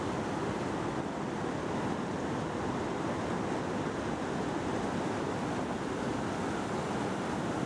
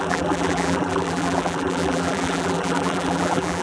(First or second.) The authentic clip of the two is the first